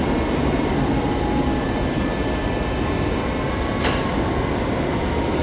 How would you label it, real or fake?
real